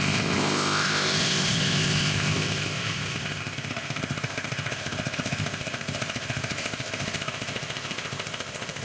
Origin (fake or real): fake